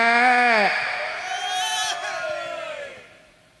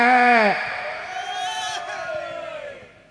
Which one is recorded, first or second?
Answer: first